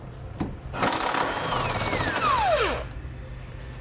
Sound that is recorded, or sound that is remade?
recorded